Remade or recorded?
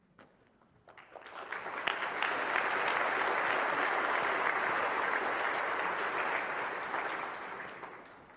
recorded